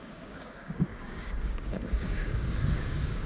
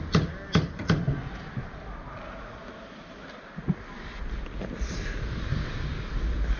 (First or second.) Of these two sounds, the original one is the second